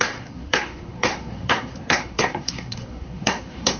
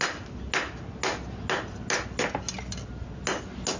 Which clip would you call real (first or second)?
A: second